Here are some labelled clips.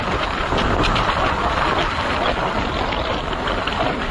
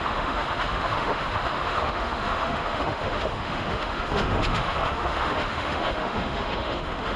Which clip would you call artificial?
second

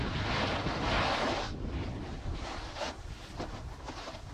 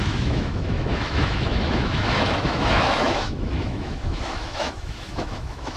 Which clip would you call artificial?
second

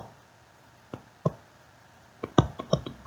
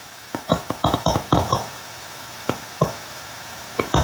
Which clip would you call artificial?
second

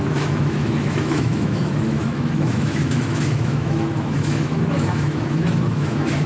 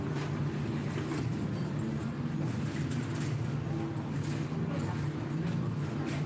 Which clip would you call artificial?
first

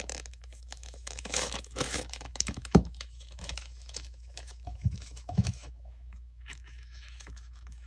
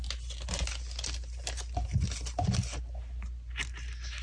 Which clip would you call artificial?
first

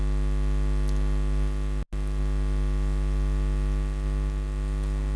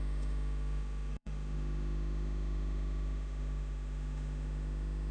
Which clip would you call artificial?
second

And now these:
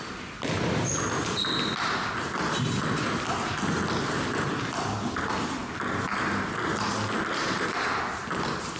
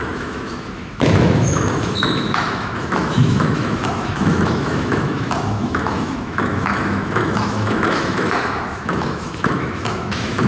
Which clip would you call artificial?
second